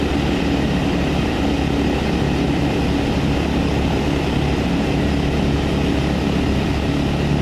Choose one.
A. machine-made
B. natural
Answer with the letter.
B